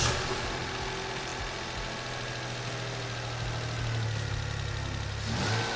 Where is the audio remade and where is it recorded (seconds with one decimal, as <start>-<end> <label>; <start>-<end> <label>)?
0.0-5.8 recorded